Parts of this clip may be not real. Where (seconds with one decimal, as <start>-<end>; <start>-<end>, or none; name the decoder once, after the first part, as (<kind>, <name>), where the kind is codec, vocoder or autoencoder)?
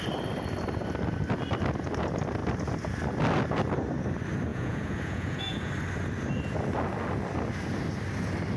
4.5-5.7 (vocoder, Vocos)